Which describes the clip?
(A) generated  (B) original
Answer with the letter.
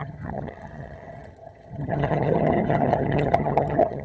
A